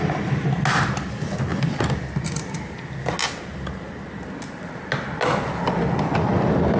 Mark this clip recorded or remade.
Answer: recorded